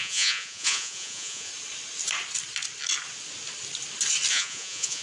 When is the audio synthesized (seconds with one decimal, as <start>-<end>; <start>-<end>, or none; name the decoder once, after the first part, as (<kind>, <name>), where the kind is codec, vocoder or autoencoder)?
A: 0.0-1.5 (vocoder, Vocos); 4.3-5.0